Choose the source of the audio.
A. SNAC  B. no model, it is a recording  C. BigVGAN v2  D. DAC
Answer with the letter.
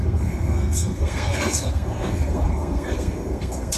A